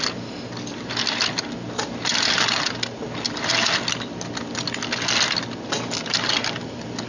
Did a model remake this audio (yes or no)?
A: no